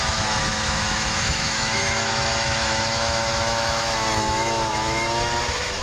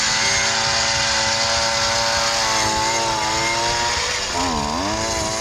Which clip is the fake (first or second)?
first